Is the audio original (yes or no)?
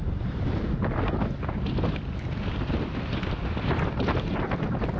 yes